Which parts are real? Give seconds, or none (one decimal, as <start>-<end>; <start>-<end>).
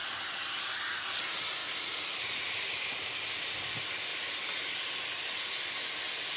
0.0-6.4